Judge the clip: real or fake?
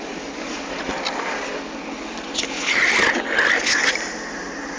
real